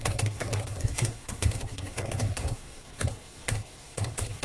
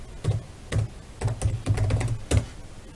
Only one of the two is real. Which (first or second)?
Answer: second